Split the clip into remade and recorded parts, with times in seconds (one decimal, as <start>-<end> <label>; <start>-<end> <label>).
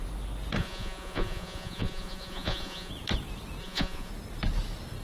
0.0-0.6 recorded; 0.6-2.9 remade; 2.9-3.6 recorded; 3.6-4.1 remade; 4.1-5.0 recorded